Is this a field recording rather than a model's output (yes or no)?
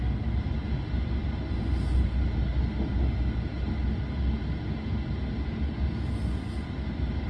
yes